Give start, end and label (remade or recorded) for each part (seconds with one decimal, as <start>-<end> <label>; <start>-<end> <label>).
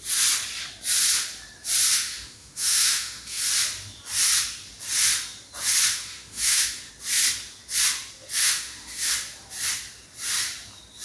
0.0-1.9 recorded; 1.9-3.4 remade; 3.4-5.9 recorded; 5.9-6.9 remade; 6.9-8.4 recorded; 8.4-9.1 remade; 9.1-11.0 recorded